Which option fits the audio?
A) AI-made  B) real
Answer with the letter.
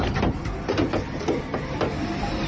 A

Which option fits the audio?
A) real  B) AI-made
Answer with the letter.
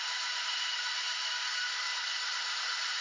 B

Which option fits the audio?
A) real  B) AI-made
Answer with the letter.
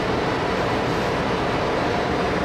B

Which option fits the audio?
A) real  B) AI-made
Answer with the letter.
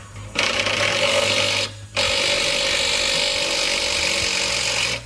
A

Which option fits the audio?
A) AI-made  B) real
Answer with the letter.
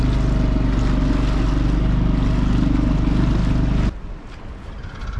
B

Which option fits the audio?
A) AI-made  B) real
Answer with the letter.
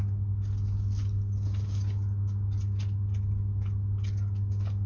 B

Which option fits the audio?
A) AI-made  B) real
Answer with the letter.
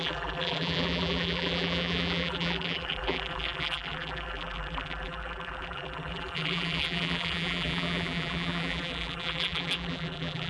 A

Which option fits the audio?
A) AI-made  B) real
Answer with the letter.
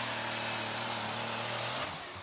B